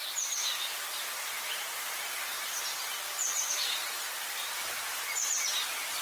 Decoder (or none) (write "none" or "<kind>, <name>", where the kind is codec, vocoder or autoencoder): vocoder, BigVGAN v2